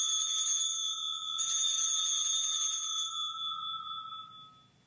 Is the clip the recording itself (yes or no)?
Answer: yes